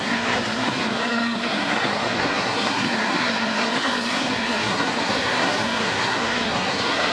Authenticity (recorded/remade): remade